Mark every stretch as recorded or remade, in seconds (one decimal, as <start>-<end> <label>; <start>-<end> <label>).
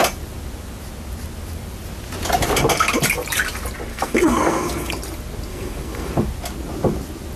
0.0-3.9 recorded; 3.9-4.9 remade; 4.9-5.5 recorded; 5.5-6.1 remade; 6.1-7.4 recorded